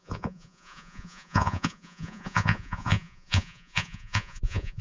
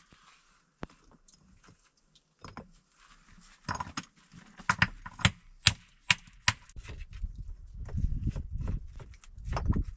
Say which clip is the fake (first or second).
first